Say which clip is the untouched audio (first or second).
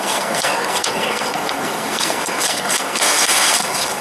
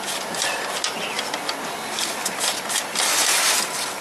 second